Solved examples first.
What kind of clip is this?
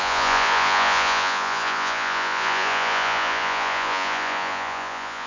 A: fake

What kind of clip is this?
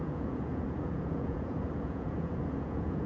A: fake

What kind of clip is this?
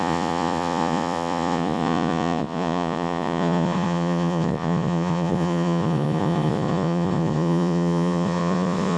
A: fake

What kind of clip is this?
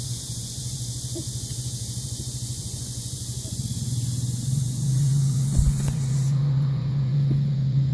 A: fake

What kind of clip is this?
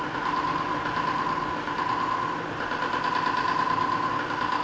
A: real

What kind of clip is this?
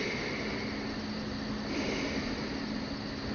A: real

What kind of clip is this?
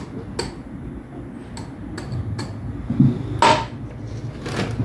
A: real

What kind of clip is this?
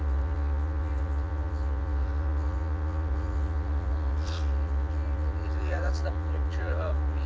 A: fake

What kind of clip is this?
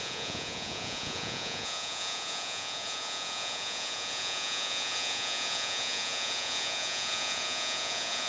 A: fake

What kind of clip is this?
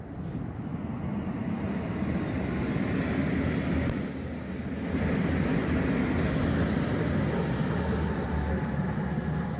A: real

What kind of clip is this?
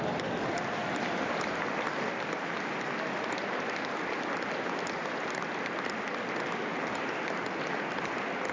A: real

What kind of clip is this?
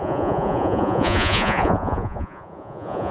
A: fake